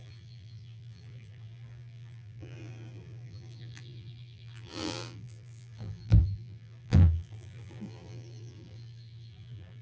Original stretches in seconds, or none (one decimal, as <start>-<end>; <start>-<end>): none